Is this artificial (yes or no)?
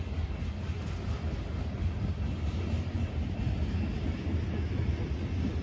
no